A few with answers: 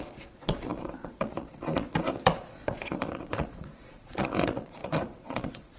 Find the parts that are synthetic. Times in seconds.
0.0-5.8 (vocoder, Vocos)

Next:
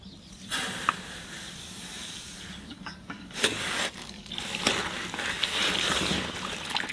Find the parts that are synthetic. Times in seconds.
1.6-4.3 (codec, DAC)

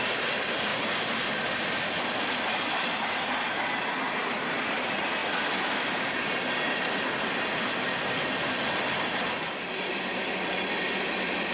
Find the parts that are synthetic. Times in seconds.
none

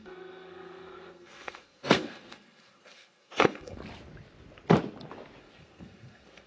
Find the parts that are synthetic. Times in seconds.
0.0-3.8 (codec, SNAC); 5.4-6.5

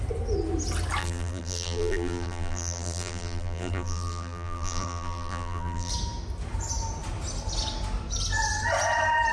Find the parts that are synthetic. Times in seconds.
1.0-5.9 (vocoder, BigVGAN v2)

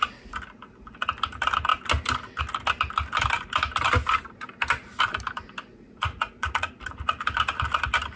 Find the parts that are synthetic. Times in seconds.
5.7-6.7 (vocoder, Vocos)